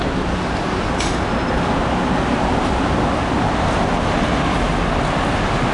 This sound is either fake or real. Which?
real